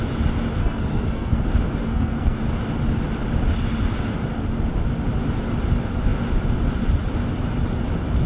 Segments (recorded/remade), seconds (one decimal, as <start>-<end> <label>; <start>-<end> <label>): 0.0-0.6 recorded; 0.6-1.4 remade; 1.4-1.8 recorded; 1.8-2.4 remade; 2.4-8.3 recorded